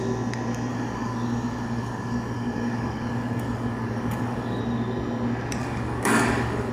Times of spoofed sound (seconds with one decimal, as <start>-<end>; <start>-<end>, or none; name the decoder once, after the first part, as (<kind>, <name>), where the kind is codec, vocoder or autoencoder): 0.7-4.6 (codec, DAC); 5.6-6.7